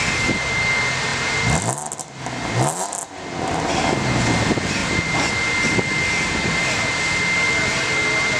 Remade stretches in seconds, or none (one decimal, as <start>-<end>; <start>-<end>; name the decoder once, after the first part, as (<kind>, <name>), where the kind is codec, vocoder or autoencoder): none